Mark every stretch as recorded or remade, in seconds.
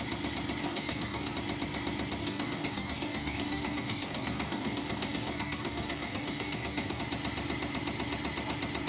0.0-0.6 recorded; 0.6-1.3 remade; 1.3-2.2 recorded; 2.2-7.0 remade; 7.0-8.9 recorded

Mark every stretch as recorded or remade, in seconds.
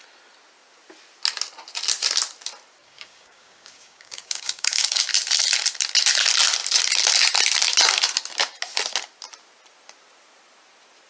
0.0-2.8 recorded; 2.8-5.1 remade; 5.1-11.1 recorded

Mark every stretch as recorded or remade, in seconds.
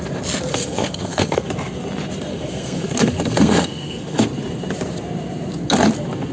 0.0-0.5 recorded; 0.5-1.5 remade; 1.5-2.3 recorded; 2.3-4.3 remade; 4.3-6.3 recorded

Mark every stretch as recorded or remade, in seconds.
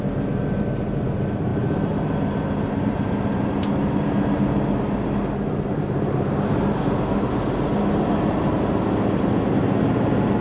0.0-10.4 recorded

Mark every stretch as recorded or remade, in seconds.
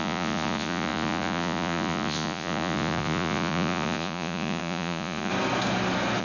0.0-5.3 remade; 5.3-6.2 recorded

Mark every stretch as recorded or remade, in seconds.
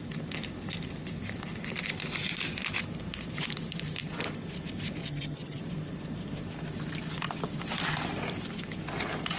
0.0-5.0 recorded; 5.0-5.6 remade; 5.6-9.4 recorded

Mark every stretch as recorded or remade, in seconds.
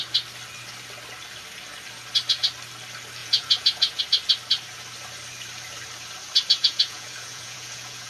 0.0-3.2 recorded; 3.2-4.0 remade; 4.0-6.6 recorded; 6.6-8.1 remade